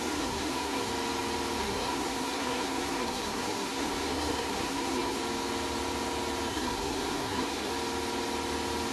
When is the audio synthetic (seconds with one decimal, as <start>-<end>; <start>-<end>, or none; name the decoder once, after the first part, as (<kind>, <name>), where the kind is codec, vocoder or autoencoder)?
0.0-0.9 (codec, SNAC); 1.6-5.2; 6.5-7.7